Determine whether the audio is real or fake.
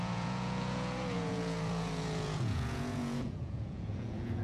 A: fake